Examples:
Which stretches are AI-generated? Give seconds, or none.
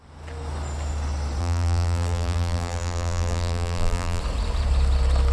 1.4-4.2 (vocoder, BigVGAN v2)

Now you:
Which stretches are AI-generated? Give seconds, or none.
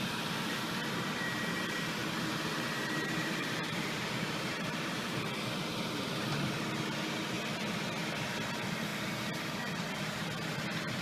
2.0-5.2 (vocoder, BigVGAN v2)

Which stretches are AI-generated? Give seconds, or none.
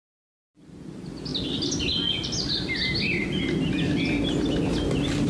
none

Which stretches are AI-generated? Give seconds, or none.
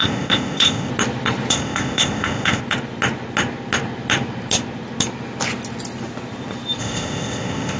0.0-0.9 (codec, ZipCodec); 1.5-2.6; 6.8-7.8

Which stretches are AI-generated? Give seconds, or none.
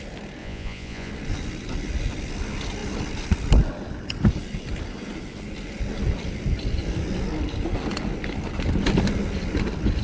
0.4-1.1 (vocoder, Vocos)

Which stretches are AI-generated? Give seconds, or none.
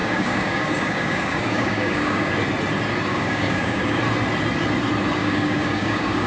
0.0-2.3 (codec, DAC); 3.1-4.0; 5.2-6.3